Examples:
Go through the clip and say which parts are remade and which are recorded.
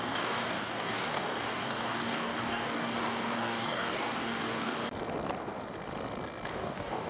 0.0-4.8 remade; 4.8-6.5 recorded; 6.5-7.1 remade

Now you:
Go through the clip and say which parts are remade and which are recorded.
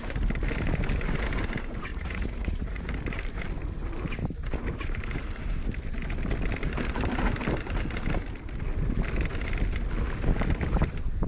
0.0-1.9 recorded; 1.9-2.9 remade; 2.9-11.3 recorded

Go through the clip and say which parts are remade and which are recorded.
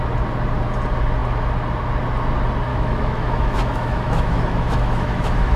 0.0-2.7 recorded; 2.7-5.6 remade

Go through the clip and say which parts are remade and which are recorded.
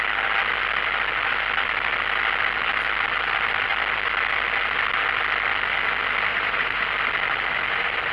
0.0-6.3 recorded; 6.3-6.8 remade; 6.8-8.1 recorded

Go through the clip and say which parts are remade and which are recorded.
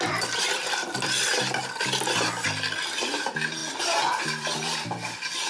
0.0-1.3 remade; 1.3-2.8 recorded; 2.8-3.6 remade; 3.6-4.2 recorded; 4.2-5.5 remade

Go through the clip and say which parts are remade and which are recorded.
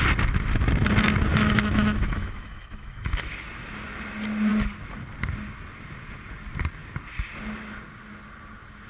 0.0-1.3 recorded; 1.3-3.3 remade; 3.3-8.9 recorded